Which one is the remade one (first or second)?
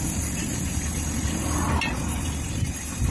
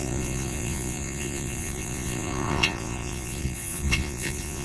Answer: second